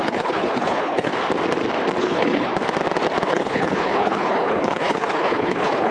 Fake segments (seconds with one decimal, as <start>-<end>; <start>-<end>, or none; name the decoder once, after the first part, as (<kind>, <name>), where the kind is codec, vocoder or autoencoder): 0.0-1.1 (codec, HILCodec); 2.0-2.5; 3.3-5.9

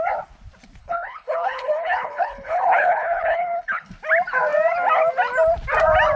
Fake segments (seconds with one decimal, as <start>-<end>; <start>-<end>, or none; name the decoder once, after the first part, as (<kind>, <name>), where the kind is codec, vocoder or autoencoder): 0.8-3.9 (codec, HILCodec)

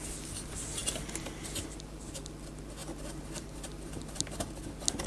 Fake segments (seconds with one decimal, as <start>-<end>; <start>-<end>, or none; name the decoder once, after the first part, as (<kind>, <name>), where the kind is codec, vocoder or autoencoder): none

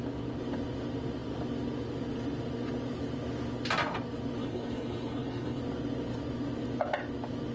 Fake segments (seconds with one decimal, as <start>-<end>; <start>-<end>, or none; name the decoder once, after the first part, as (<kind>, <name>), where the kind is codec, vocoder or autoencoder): 4.4-5.6 (codec, HILCodec)

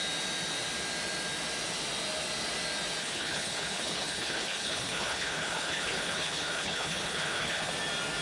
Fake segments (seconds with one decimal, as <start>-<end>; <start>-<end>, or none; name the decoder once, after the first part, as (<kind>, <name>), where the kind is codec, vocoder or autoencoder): 3.0-7.7 (codec, HILCodec)

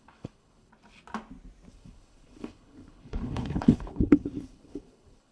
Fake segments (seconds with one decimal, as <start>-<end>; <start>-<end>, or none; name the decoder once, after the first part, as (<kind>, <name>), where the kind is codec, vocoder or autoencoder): 0.0-0.7 (codec, HILCodec); 1.7-5.3

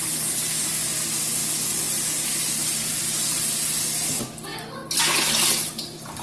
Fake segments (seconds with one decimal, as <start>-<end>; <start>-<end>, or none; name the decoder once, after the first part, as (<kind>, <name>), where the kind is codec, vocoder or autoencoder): none